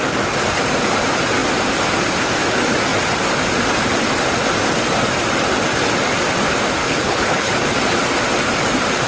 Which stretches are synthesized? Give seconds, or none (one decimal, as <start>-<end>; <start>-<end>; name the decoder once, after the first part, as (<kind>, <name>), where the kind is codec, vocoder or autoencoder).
6.8-7.5 (codec, HILCodec)